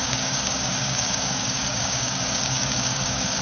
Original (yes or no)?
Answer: no